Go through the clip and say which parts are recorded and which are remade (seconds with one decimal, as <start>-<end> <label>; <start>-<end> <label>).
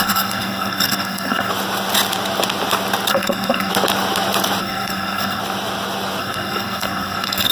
0.0-1.5 remade; 1.5-3.1 recorded; 3.1-3.7 remade; 3.7-4.6 recorded; 4.6-5.4 remade; 5.4-6.2 recorded; 6.2-7.5 remade